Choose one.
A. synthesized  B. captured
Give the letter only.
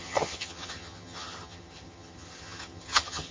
A